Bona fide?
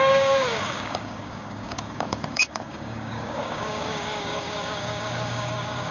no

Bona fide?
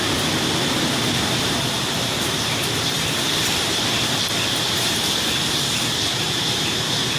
no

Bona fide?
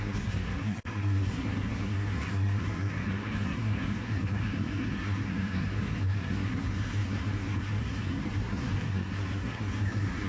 no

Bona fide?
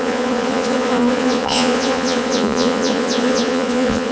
no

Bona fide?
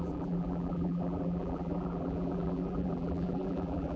no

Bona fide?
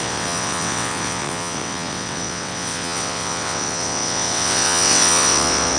no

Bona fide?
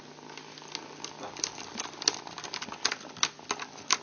yes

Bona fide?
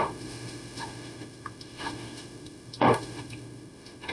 no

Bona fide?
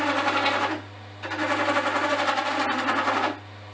yes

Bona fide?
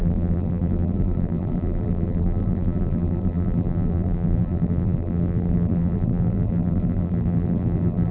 no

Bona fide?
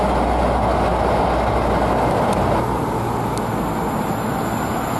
yes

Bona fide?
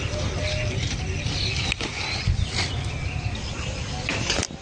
yes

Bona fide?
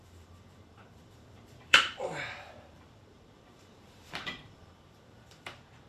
no